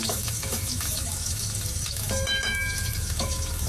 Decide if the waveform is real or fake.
fake